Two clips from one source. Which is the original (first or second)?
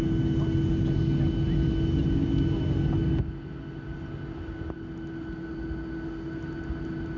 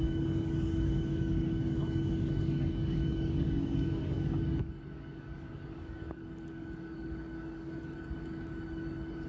first